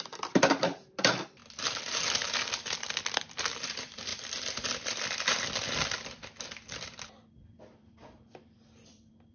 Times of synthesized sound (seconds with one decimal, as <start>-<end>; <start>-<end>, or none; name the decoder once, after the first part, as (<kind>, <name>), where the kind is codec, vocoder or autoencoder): 0.0-1.4 (vocoder, BigVGAN v2); 2.2-9.3